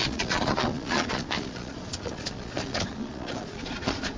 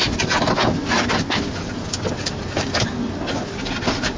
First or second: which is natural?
second